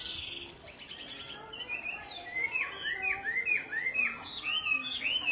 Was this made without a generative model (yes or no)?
yes